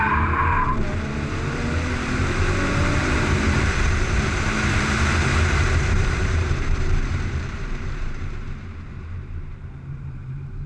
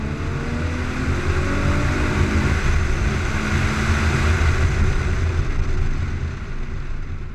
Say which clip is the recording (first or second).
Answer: second